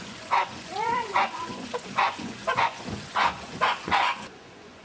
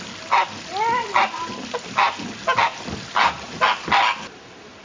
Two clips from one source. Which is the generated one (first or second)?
first